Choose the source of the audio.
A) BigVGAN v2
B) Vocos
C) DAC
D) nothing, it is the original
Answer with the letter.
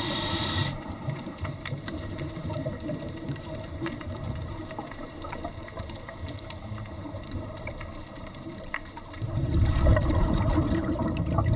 A